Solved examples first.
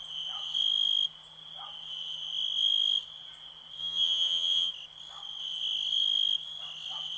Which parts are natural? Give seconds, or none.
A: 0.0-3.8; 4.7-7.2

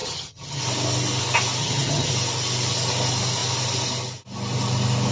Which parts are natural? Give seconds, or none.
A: 0.6-1.6; 2.1-5.1